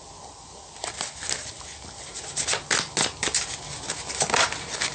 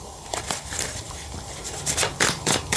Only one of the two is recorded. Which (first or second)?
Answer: first